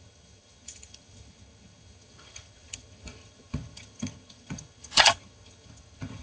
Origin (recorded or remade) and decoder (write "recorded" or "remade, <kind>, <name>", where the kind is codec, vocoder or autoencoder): remade, vocoder, HiFi-GAN